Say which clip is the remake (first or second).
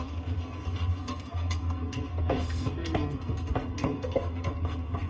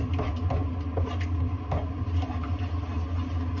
first